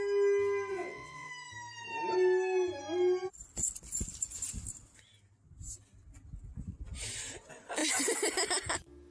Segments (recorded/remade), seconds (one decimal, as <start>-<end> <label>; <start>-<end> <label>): 0.0-0.7 recorded; 0.7-1.3 remade; 1.3-9.1 recorded